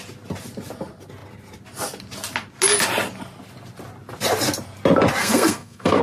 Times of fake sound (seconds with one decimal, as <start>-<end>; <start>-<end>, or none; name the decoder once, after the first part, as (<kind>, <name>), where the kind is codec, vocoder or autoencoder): 5.2-6.0 (codec, SNAC)